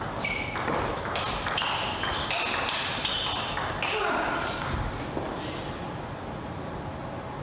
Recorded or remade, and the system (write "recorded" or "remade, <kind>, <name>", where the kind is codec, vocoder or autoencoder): recorded